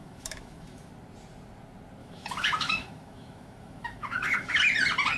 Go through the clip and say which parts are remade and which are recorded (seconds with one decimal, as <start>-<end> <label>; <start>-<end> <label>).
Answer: 0.0-0.9 remade; 0.9-2.0 recorded; 2.0-4.6 remade; 4.6-5.2 recorded